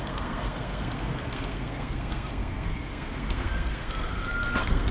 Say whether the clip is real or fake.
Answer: fake